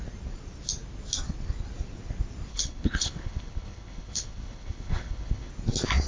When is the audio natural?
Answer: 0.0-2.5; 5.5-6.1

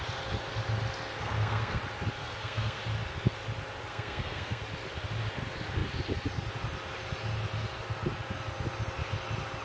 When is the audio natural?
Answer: 0.0-1.2; 1.8-2.2; 2.8-3.9; 4.6-9.6